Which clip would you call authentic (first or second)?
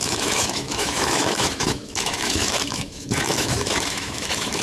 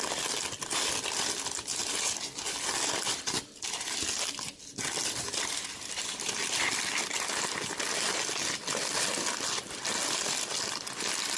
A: second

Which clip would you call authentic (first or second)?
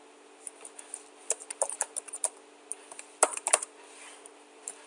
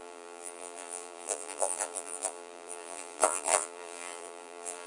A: first